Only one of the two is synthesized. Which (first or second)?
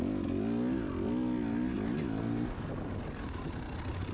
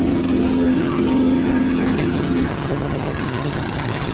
second